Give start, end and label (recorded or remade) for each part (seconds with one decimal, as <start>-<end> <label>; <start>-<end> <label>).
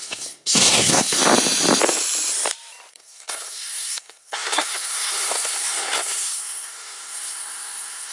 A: 0.0-1.2 remade; 1.2-2.9 recorded; 2.9-8.1 remade